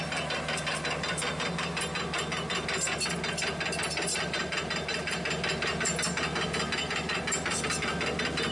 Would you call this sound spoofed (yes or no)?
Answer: no